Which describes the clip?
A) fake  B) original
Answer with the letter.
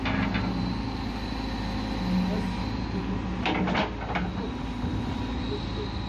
B